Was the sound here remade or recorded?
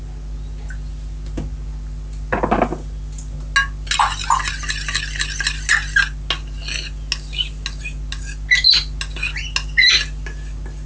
recorded